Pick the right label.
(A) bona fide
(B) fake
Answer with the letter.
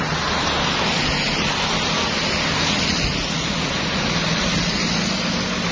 A